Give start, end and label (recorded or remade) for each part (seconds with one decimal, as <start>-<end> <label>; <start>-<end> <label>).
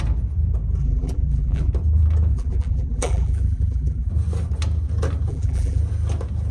0.0-0.8 recorded; 0.8-1.7 remade; 1.7-2.3 recorded; 2.3-4.1 remade; 4.1-5.3 recorded; 5.3-5.8 remade; 5.8-6.5 recorded